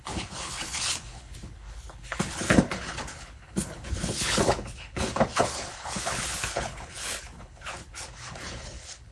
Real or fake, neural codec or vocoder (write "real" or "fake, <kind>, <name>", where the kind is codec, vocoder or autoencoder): fake, codec, HILCodec